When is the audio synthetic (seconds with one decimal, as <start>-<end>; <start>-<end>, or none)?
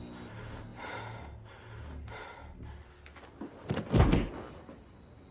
none